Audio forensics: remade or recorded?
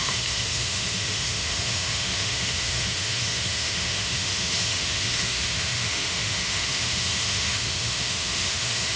remade